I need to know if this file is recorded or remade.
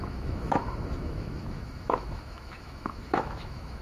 remade